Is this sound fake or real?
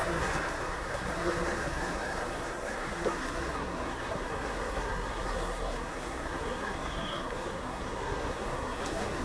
fake